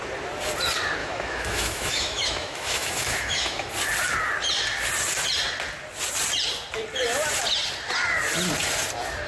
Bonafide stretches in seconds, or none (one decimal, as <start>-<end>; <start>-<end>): 0.0-1.0; 3.7-9.3

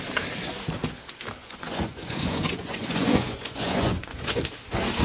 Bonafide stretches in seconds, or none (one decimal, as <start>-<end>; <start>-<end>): 0.0-1.4; 4.4-5.0

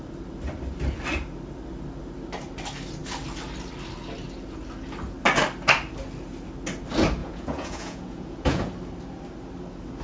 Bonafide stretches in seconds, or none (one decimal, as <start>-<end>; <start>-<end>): 0.0-7.2; 8.7-10.0

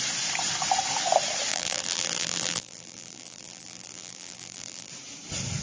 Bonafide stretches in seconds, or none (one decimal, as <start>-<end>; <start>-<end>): 0.0-1.5; 4.9-5.6

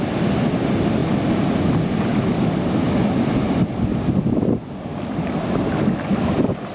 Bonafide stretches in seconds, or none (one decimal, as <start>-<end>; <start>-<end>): 0.0-6.7

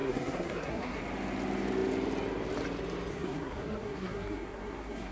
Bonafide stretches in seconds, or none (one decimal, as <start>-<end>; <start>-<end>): 1.0-3.1

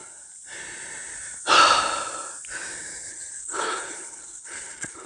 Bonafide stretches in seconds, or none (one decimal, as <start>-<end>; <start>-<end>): 0.0-3.1